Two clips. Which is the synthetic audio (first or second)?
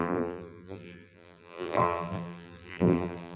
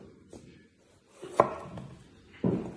first